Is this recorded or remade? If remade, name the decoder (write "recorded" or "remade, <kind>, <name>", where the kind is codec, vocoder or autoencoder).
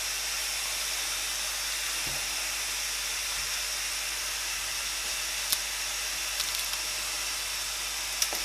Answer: recorded